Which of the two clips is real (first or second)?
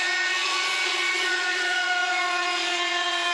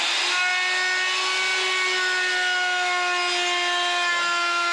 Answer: second